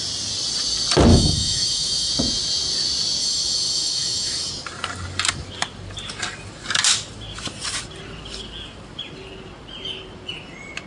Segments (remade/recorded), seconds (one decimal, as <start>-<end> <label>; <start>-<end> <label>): 0.0-1.1 recorded; 1.1-2.1 remade; 2.1-3.2 recorded; 3.2-4.5 remade; 4.5-10.9 recorded